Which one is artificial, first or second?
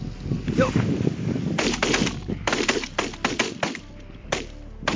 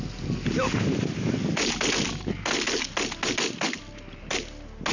first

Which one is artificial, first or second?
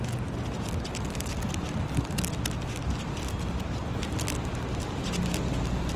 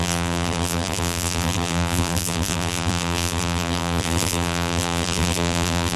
second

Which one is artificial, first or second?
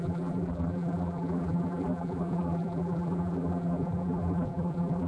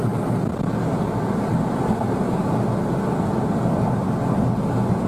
first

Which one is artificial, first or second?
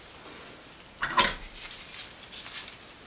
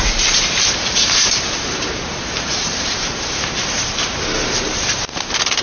second